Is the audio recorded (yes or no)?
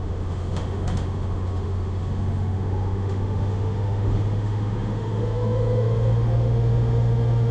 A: no